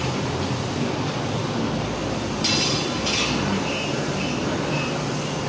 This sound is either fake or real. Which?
real